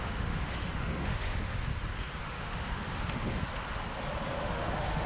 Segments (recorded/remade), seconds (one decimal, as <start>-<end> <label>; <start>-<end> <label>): 0.0-1.7 remade; 1.7-2.2 recorded; 2.2-3.4 remade; 3.4-4.4 recorded; 4.4-5.1 remade